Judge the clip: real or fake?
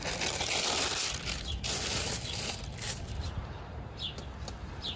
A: real